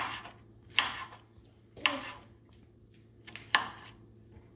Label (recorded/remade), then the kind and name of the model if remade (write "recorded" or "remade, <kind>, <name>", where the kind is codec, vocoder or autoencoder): recorded